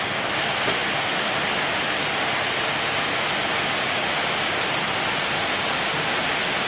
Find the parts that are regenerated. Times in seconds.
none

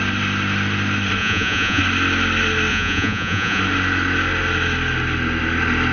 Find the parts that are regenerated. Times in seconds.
1.2-1.8 (vocoder, Vocos); 2.7-3.6

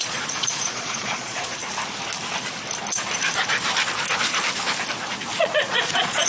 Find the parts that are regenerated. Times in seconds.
0.0-1.6 (vocoder, Vocos); 5.4-6.3

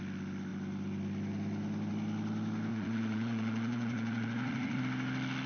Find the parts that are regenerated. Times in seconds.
2.7-4.8 (vocoder, Vocos)

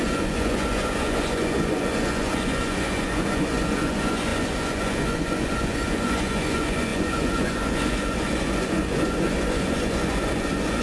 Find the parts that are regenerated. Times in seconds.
0.0-10.8 (vocoder, Vocos)

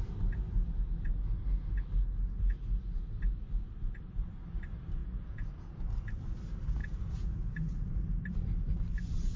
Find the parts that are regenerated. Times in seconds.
5.0-5.8 (vocoder, Vocos); 6.8-7.9